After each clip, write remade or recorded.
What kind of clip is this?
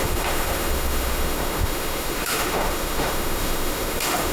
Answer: remade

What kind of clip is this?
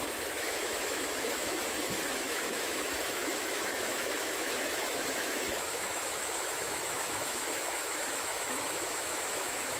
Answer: remade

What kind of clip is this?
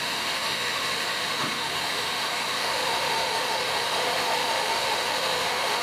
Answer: remade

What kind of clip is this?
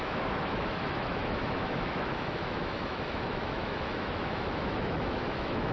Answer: remade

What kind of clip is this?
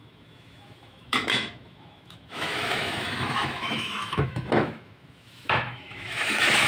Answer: remade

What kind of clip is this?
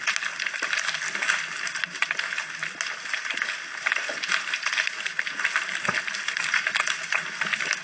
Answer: recorded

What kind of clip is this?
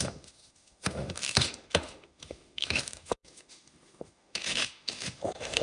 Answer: remade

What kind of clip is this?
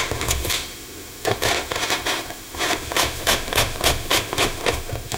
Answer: remade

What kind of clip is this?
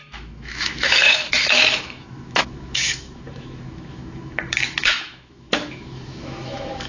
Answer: remade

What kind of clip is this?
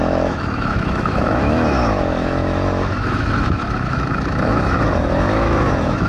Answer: remade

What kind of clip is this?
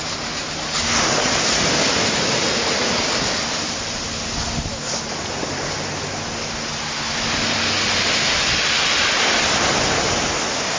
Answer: recorded